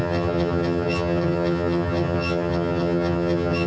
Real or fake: fake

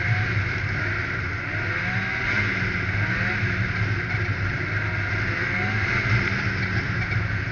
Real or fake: real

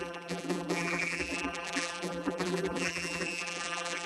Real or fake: fake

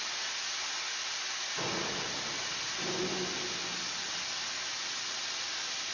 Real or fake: real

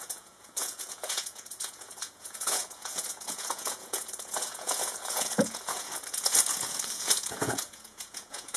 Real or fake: fake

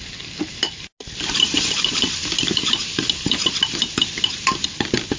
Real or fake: real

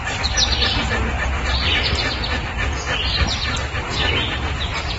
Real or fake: real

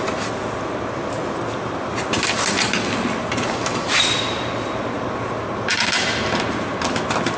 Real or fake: real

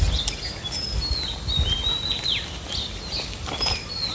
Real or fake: real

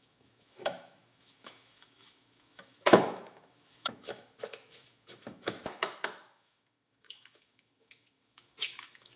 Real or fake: fake